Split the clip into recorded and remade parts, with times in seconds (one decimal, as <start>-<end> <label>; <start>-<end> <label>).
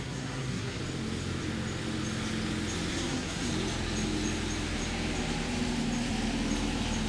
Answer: 0.0-0.8 remade; 0.8-2.9 recorded; 2.9-3.5 remade; 3.5-7.1 recorded